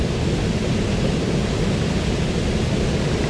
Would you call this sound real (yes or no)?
yes